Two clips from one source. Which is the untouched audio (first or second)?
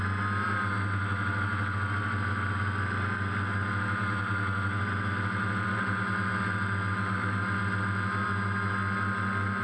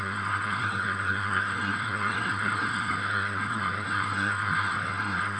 first